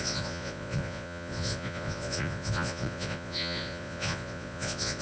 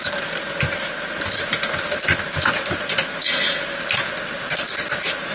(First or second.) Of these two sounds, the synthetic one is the first